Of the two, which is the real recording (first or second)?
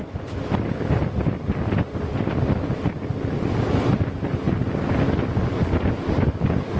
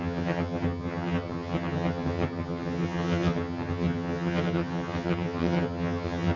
first